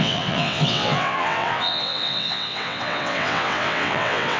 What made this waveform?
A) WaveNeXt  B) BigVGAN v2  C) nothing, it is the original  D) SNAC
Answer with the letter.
A